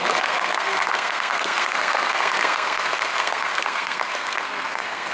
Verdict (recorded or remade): remade